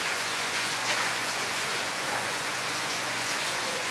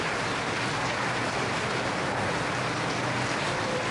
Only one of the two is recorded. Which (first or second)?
second